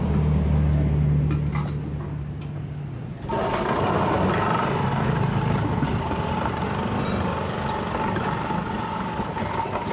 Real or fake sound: real